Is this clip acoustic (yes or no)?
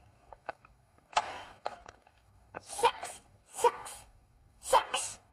no